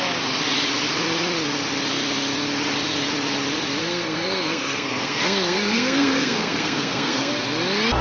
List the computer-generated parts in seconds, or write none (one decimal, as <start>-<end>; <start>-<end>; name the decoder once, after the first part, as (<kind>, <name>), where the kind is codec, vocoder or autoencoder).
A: 3.8-7.3 (codec, SNAC)